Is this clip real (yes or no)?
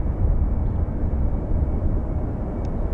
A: yes